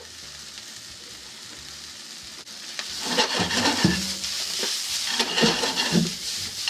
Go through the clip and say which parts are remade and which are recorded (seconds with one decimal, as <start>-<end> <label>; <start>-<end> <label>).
0.0-6.7 recorded